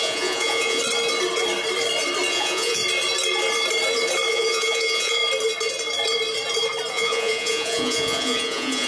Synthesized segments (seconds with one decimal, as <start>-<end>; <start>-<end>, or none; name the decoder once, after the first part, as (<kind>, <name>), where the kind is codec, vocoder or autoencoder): 0.0-0.8 (vocoder, Vocos); 2.3-2.8; 4.3-5.2; 6.9-8.9